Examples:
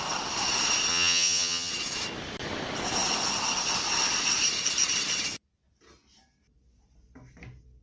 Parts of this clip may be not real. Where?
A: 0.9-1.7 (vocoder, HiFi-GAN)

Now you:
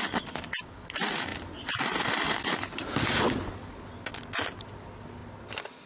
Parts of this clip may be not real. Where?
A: none

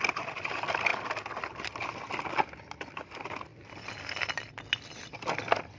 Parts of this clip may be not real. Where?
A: none

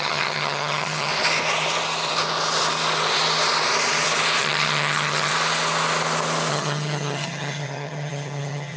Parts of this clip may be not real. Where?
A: 0.0-1.1 (vocoder, HiFi-GAN); 4.4-5.3; 6.5-8.8

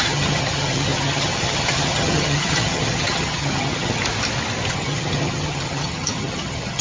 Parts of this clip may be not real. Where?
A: 0.0-4.0 (vocoder, HiFi-GAN); 4.7-6.8